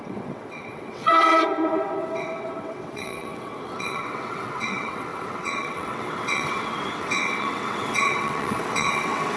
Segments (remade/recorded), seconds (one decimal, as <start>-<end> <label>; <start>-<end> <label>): 0.0-9.4 remade